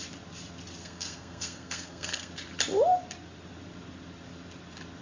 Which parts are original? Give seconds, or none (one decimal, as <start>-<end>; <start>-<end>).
0.0-0.8; 2.3-5.0

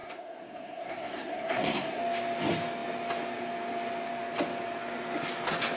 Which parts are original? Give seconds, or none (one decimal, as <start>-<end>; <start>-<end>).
2.0-5.8

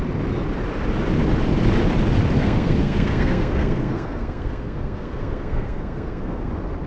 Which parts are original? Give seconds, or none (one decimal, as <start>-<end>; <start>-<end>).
0.0-2.4; 6.5-6.9

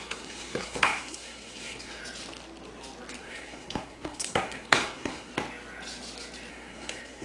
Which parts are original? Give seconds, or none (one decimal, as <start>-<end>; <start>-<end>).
2.0-3.2; 5.3-6.5